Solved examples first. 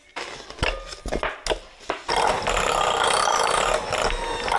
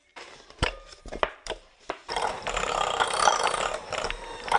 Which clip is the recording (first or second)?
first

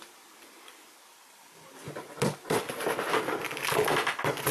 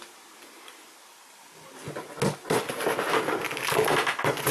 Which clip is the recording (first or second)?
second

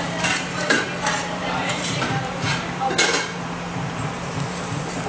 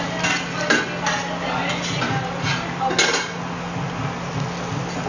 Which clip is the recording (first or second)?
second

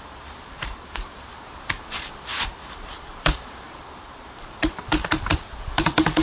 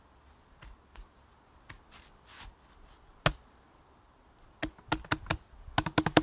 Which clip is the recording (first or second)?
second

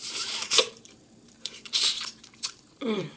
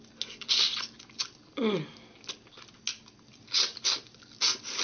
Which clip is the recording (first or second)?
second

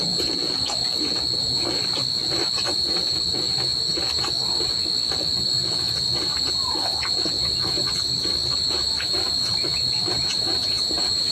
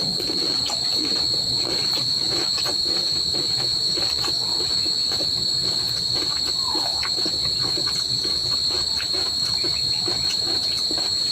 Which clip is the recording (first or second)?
first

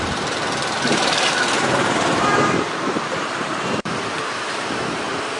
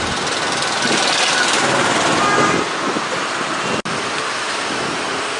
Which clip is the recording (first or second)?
second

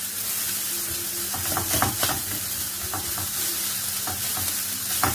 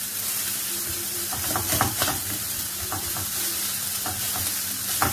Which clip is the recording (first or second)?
first